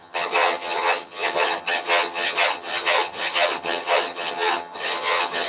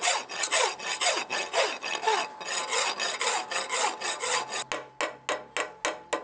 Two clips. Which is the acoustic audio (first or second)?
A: second